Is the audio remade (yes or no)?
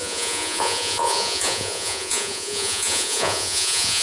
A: yes